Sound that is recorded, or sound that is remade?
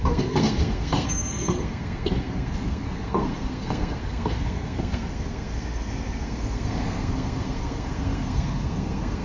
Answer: remade